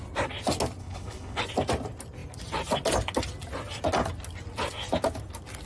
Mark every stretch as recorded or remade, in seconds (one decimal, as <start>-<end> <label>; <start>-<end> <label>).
0.0-0.8 recorded; 0.8-1.4 remade; 1.4-5.7 recorded